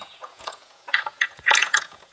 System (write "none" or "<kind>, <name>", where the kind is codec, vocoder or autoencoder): vocoder, Vocos